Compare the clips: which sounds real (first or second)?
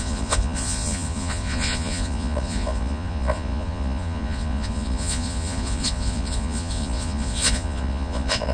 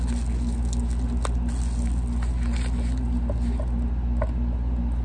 second